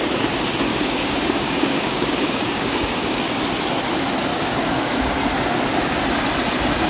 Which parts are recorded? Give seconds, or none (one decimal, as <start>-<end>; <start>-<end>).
0.0-0.7; 3.3-4.3; 5.1-6.9

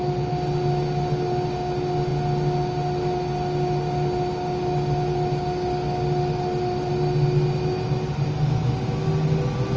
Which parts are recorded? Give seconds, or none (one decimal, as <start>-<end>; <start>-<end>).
0.0-9.8

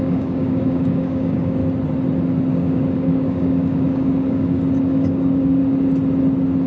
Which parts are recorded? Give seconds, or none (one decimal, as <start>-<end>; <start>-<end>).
1.6-2.5; 5.6-6.7

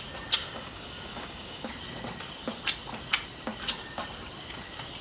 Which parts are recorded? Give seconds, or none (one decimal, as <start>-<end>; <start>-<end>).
0.0-0.4; 1.7-5.0